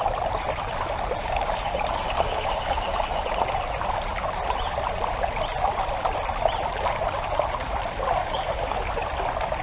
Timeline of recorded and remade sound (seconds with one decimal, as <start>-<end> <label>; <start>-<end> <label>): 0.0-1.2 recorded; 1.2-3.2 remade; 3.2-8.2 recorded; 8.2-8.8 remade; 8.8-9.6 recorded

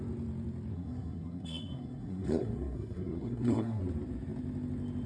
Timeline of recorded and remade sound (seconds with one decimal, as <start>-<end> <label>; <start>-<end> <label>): 0.0-0.7 recorded; 0.7-3.8 remade; 3.8-5.1 recorded

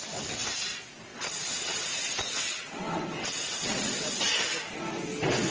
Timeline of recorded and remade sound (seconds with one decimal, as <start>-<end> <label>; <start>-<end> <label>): 0.0-1.1 recorded; 1.1-4.4 remade; 4.4-5.5 recorded